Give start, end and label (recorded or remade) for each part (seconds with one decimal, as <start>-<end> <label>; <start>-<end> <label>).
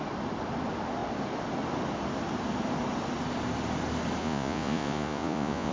0.0-4.2 recorded; 4.2-5.7 remade